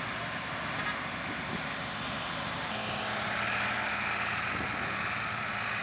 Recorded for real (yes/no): yes